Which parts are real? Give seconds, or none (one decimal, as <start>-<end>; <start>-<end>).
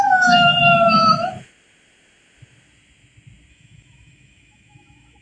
0.5-3.5